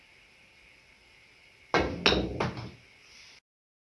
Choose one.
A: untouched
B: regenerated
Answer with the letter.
A